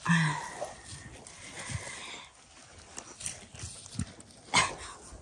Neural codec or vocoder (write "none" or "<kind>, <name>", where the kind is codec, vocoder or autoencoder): none